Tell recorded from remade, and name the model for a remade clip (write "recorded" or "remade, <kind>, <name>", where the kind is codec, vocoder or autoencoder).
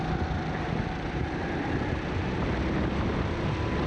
recorded